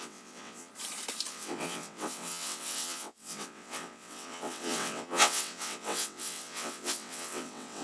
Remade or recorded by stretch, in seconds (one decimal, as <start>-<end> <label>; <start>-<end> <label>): 0.0-0.7 remade; 0.7-1.3 recorded; 1.3-7.8 remade